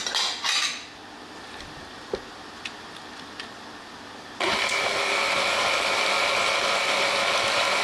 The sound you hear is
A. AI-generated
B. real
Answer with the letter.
B